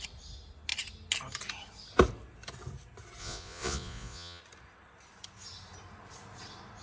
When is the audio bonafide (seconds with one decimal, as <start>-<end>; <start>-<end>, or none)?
0.0-3.2; 4.4-6.8